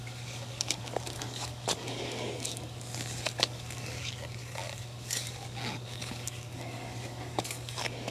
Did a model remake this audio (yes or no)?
yes